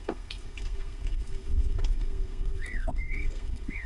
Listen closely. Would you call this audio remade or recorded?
remade